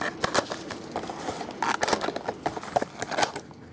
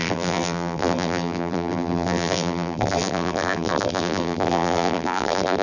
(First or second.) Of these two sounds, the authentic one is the first